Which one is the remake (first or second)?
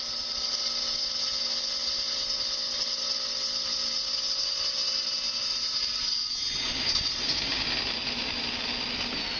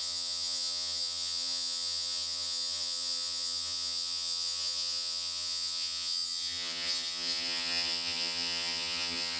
second